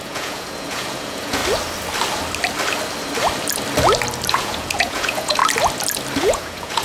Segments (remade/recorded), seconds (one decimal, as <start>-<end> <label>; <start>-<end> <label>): 0.0-1.4 remade; 1.4-4.3 recorded; 4.3-5.4 remade; 5.4-6.2 recorded; 6.2-6.8 remade